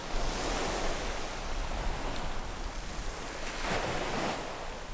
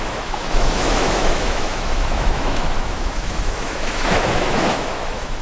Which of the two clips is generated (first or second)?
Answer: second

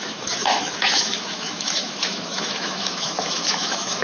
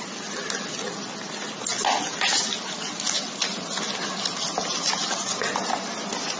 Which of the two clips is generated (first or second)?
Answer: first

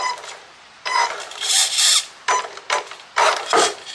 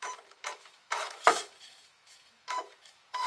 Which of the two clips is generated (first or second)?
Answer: second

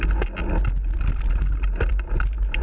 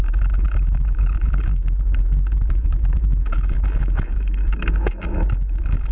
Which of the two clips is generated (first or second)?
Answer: second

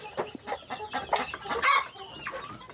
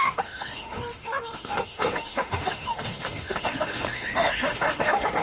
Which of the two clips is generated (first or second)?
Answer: second